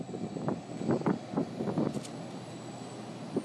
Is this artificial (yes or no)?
no